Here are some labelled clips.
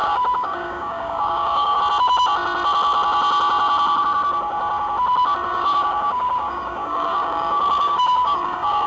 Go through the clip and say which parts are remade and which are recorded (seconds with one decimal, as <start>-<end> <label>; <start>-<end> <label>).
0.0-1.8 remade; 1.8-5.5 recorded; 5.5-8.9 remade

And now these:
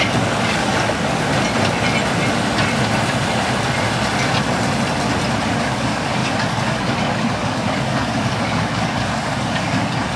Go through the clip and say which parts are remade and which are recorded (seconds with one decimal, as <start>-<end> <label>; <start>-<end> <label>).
0.0-1.3 remade; 1.3-5.6 recorded; 5.6-10.2 remade

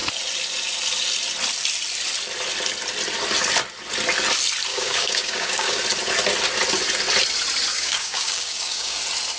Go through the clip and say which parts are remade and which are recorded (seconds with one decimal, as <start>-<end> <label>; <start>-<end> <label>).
0.0-4.7 recorded; 4.7-5.8 remade; 5.8-7.7 recorded; 7.7-9.0 remade; 9.0-9.4 recorded

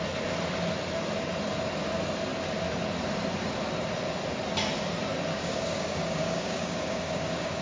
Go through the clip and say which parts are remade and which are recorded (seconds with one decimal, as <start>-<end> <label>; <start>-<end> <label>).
0.0-5.3 recorded; 5.3-7.6 remade

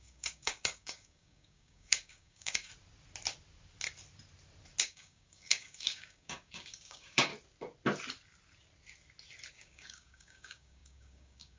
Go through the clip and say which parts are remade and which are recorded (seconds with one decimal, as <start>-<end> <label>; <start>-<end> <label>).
0.0-2.7 remade; 2.7-4.8 recorded; 4.8-7.3 remade; 7.3-9.5 recorded; 9.5-11.6 remade

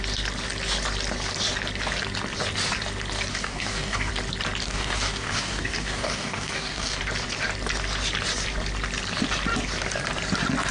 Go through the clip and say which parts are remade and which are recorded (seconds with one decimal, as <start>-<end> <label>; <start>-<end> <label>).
0.0-3.3 recorded; 3.3-4.1 remade; 4.1-4.6 recorded; 4.6-7.0 remade; 7.0-10.7 recorded

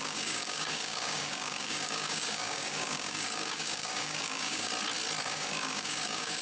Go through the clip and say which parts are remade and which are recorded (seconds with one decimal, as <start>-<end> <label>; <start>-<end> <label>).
0.0-4.7 remade; 4.7-5.2 recorded; 5.2-6.4 remade